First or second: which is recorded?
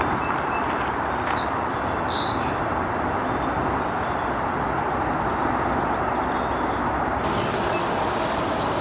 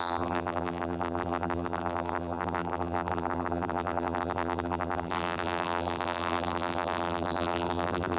first